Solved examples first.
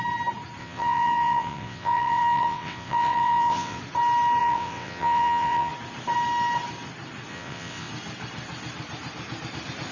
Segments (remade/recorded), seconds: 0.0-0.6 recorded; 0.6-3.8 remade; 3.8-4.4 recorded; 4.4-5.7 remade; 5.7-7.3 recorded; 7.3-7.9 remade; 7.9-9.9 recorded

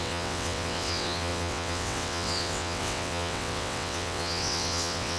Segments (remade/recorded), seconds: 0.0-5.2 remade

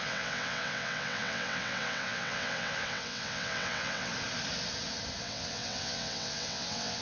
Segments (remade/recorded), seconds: 0.0-4.1 remade; 4.1-5.2 recorded; 5.2-7.0 remade

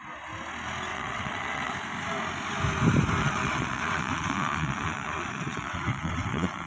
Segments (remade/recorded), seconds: 0.0-0.9 recorded; 0.9-1.7 remade; 1.7-3.2 recorded; 3.2-6.7 remade

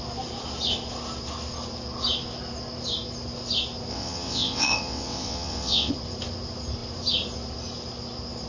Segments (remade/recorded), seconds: 0.0-3.9 recorded; 3.9-5.9 remade; 5.9-8.5 recorded

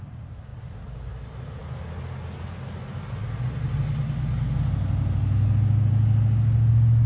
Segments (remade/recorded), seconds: 0.0-7.1 recorded

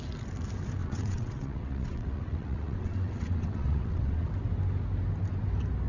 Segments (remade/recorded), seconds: 0.0-0.8 recorded; 0.8-4.3 remade; 4.3-5.9 recorded

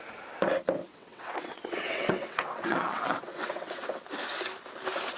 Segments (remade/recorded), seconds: 0.0-0.9 recorded; 0.9-4.0 remade; 4.0-5.2 recorded